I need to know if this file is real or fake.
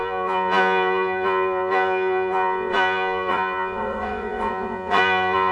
fake